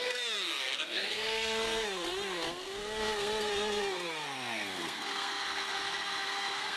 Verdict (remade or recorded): remade